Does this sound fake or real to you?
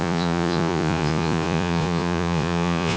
fake